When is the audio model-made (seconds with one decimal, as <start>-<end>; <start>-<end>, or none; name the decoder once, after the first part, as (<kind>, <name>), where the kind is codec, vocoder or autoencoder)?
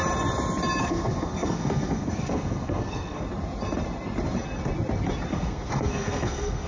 0.8-3.2 (codec, SNAC); 5.3-6.7